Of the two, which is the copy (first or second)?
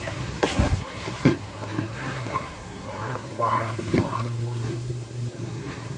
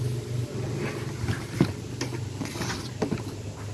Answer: first